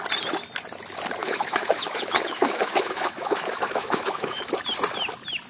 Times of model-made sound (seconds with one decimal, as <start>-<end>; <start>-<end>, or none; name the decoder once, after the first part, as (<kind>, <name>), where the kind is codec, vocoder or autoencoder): 1.2-4.5 (autoencoder, DAC-VAE)